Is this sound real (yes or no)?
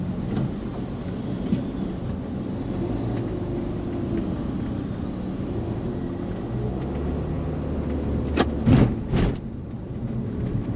yes